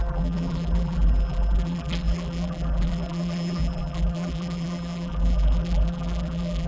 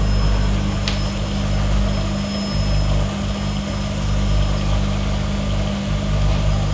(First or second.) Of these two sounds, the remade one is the first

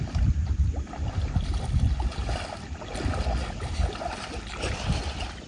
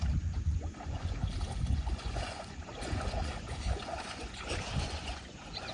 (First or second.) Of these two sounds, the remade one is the second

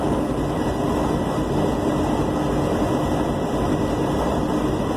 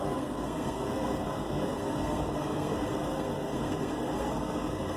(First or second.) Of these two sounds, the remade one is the second